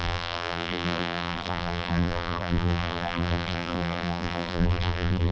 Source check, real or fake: fake